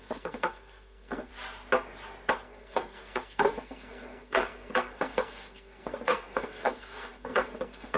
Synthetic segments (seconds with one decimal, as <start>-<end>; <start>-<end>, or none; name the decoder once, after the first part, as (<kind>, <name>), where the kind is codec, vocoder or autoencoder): 0.0-1.3 (codec, SNAC); 2.3-8.0